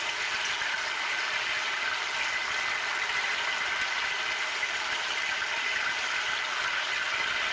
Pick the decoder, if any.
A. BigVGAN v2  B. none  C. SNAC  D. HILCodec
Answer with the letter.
A